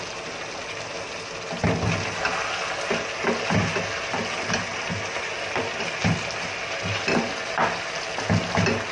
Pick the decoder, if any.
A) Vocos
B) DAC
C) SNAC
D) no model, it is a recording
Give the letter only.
D